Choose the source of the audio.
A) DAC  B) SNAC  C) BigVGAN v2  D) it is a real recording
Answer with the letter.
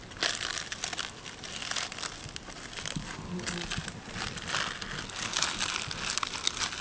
D